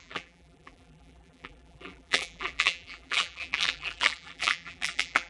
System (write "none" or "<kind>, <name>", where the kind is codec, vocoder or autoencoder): vocoder, BigVGAN v2